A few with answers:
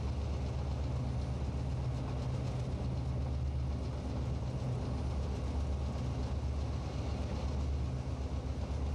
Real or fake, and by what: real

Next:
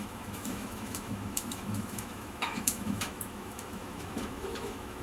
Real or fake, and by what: fake, autoencoder, DAC-VAE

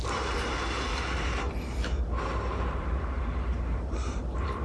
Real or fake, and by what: fake, vocoder, BigVGAN v2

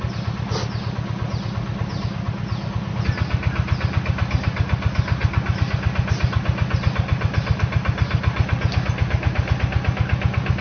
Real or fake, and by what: real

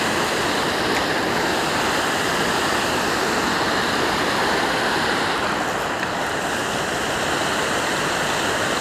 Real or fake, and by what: real